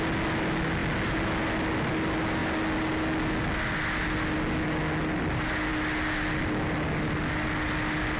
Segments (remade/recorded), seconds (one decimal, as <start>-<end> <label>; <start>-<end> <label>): 0.0-8.2 recorded